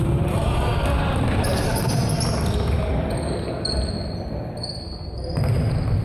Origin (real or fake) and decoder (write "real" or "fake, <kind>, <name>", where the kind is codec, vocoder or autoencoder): real